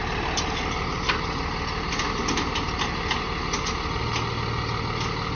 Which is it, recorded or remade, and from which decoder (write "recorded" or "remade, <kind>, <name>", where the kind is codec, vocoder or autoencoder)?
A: recorded